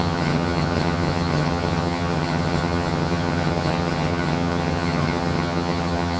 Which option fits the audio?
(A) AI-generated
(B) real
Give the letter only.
A